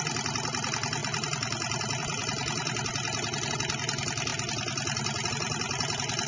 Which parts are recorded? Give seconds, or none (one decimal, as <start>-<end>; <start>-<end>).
0.0-6.3